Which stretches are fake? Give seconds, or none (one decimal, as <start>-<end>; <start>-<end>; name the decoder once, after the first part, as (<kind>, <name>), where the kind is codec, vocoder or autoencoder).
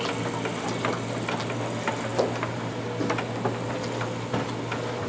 none